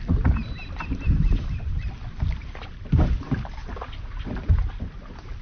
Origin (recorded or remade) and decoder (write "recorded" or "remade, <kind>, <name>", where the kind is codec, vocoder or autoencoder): recorded